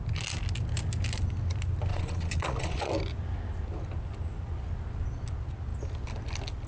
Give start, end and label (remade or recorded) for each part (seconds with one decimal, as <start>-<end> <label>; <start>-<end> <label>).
0.0-1.9 recorded; 1.9-2.9 remade; 2.9-6.7 recorded